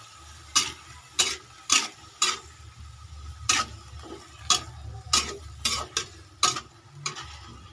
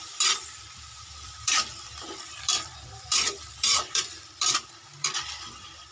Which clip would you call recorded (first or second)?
first